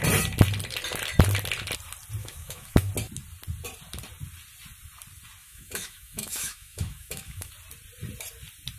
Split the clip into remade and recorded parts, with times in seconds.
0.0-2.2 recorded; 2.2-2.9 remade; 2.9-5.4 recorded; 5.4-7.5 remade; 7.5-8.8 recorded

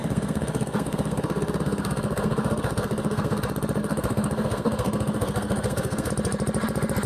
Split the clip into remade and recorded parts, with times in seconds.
0.0-3.4 remade; 3.4-3.8 recorded; 3.8-6.1 remade; 6.1-7.1 recorded